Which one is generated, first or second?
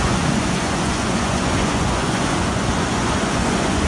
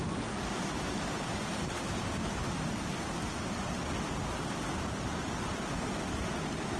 first